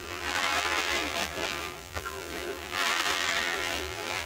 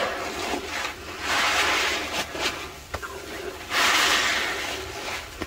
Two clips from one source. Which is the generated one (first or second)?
first